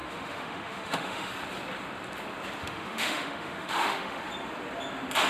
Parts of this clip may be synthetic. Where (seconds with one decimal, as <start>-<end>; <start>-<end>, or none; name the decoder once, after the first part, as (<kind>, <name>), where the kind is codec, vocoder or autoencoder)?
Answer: 0.0-1.3 (autoencoder, DAC-VAE); 2.6-4.3